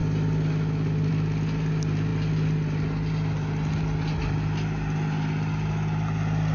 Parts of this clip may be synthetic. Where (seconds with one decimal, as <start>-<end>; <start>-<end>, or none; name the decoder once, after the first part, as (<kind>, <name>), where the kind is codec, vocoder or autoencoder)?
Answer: none